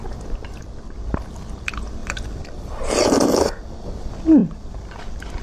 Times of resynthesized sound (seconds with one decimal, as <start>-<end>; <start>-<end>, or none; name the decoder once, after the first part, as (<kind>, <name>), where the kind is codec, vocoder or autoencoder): 2.0-3.6 (vocoder, BigVGAN v2)